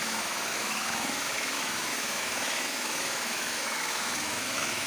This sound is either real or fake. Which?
fake